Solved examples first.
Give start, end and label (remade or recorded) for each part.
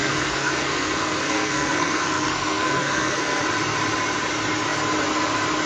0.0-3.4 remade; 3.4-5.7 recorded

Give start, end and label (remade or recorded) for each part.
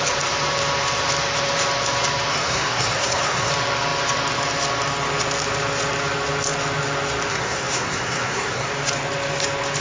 0.0-2.3 recorded; 2.3-3.5 remade; 3.5-7.3 recorded; 7.3-8.7 remade; 8.7-9.8 recorded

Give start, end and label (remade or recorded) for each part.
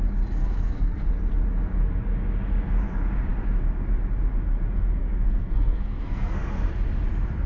0.0-0.4 recorded; 0.4-1.1 remade; 1.1-5.0 recorded; 5.0-6.7 remade; 6.7-7.5 recorded